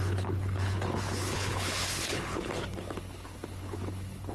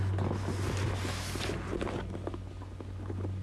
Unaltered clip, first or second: second